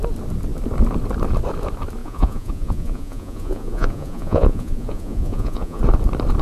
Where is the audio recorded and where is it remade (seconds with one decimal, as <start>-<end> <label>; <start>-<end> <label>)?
0.0-2.0 recorded; 2.0-5.8 remade; 5.8-6.4 recorded